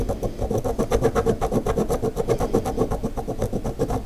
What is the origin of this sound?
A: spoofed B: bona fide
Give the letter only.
B